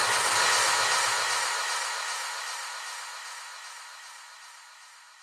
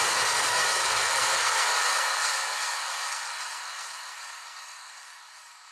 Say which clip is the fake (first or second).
second